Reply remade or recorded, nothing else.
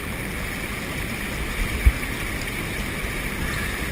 recorded